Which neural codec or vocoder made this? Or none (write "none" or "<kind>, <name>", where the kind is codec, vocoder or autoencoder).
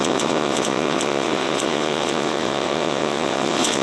vocoder, WaveNeXt